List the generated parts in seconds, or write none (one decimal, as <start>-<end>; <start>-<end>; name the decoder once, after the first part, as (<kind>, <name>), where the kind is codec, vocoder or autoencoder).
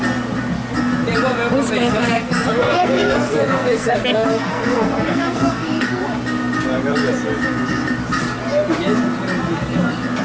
1.8-6.0 (codec, SNAC)